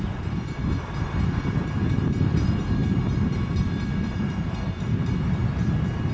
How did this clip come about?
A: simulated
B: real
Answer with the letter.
B